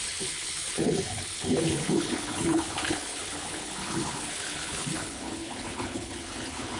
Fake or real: fake